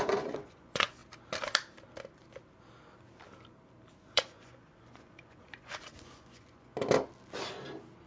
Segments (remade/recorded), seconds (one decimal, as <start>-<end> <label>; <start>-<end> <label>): 0.0-1.0 remade; 1.0-4.0 recorded; 4.0-6.7 remade; 6.7-8.1 recorded